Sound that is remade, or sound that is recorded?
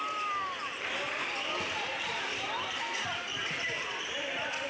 recorded